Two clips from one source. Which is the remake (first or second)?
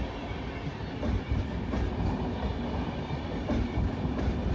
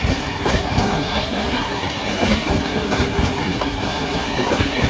second